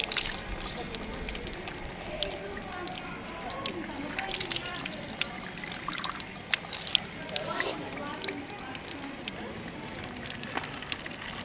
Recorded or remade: recorded